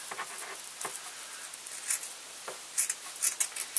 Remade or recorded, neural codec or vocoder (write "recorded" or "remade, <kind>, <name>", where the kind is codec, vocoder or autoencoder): recorded